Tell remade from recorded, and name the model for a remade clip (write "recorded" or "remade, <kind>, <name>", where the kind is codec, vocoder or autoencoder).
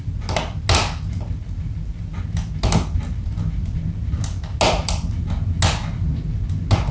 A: recorded